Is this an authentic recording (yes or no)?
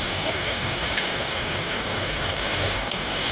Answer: no